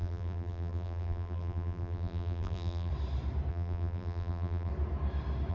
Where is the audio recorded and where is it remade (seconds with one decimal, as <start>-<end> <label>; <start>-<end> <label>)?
0.0-2.9 remade; 2.9-3.5 recorded; 3.5-4.7 remade; 4.7-5.5 recorded

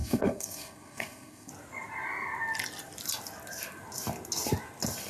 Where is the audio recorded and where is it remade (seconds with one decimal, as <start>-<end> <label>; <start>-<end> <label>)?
0.0-1.5 remade; 1.5-5.1 recorded

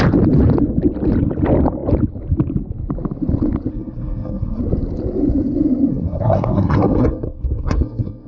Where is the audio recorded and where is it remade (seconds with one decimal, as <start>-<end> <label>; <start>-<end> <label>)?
0.0-3.7 recorded; 3.7-4.6 remade; 4.6-5.9 recorded; 5.9-8.3 remade

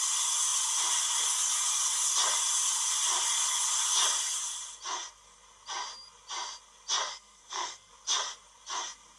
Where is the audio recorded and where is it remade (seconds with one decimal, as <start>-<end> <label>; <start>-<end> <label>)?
0.0-7.1 recorded; 7.1-7.9 remade; 7.9-9.2 recorded

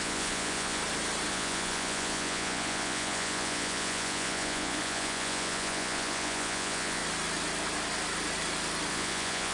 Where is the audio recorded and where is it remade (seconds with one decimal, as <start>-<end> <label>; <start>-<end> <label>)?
0.0-0.8 remade; 0.8-1.3 recorded; 1.3-7.0 remade; 7.0-8.9 recorded; 8.9-9.5 remade

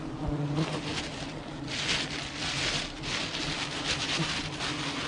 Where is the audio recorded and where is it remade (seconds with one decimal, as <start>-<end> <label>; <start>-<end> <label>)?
0.0-5.1 recorded

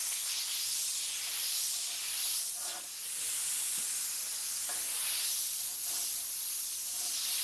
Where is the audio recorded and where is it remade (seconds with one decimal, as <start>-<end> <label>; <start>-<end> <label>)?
0.0-0.5 remade; 0.5-7.4 recorded

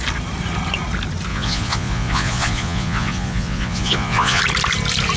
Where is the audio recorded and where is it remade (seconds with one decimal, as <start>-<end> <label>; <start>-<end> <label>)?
0.0-1.3 recorded; 1.3-4.4 remade; 4.4-5.2 recorded